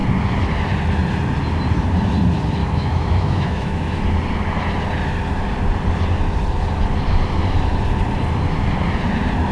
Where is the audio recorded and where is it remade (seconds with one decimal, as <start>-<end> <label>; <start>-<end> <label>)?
0.0-2.6 recorded; 2.6-4.0 remade; 4.0-9.5 recorded